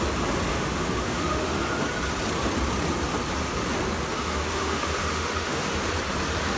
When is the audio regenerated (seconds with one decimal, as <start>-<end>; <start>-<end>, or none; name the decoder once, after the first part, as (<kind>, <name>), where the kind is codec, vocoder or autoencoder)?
0.5-1.6 (autoencoder, DAC-VAE); 4.2-5.7